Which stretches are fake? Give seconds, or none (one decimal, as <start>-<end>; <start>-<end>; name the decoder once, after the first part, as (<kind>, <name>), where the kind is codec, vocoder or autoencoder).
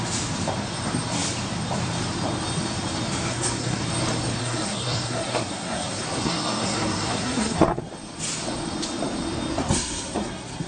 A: 3.3-3.8 (codec, SNAC); 4.4-7.9; 9.6-10.7